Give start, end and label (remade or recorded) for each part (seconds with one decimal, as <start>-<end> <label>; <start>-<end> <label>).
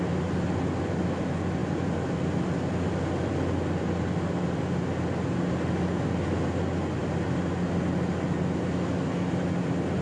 0.0-10.0 recorded